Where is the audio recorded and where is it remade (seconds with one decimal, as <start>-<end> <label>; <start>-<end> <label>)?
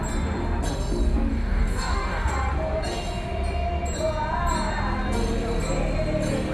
0.0-1.3 recorded; 1.3-2.3 remade; 2.3-6.5 recorded